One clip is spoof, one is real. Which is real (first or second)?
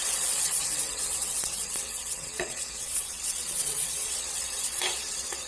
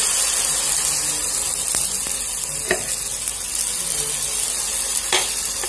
second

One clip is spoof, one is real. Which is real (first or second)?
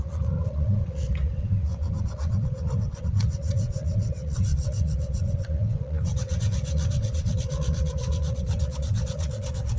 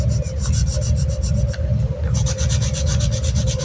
second